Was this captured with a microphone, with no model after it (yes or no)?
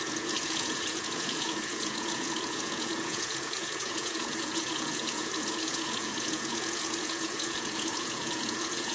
no